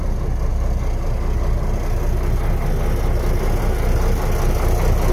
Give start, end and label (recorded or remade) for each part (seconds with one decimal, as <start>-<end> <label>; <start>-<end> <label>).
0.0-5.1 recorded